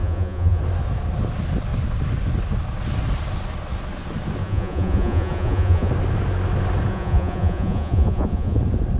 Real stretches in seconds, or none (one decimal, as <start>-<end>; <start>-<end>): 0.6-4.4; 5.9-6.9; 8.6-9.0